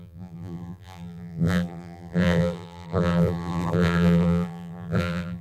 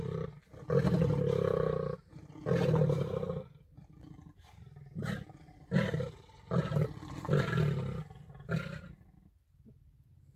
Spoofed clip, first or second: first